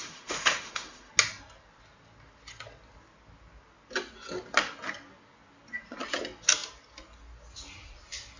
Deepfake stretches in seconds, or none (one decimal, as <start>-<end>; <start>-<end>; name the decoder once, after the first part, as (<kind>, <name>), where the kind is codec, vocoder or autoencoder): 0.0-1.1 (autoencoder, DAC-VAE)